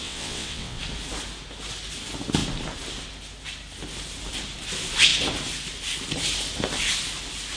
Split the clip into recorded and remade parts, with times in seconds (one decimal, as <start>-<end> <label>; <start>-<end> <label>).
0.0-0.8 remade; 0.8-7.6 recorded